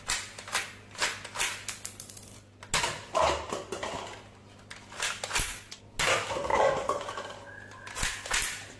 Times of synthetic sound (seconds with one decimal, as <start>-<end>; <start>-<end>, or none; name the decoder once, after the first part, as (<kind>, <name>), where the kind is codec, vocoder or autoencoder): 6.5-7.1 (vocoder, Vocos)